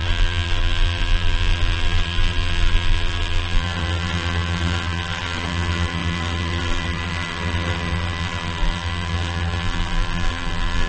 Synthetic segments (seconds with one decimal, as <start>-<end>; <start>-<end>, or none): 0.0-10.9